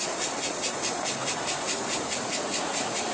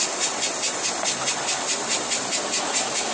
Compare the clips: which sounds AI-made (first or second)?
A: first